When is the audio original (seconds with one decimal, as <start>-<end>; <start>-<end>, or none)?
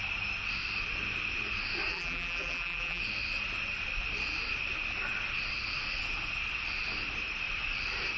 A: 0.0-1.9; 3.0-8.2